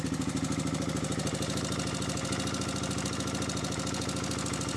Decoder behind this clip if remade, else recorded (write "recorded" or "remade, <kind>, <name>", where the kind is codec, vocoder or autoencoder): recorded